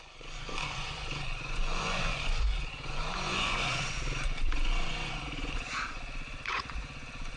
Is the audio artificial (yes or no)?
yes